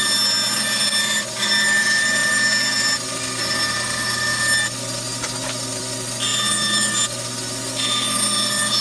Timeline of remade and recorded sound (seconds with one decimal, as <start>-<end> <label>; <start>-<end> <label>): 0.0-8.8 recorded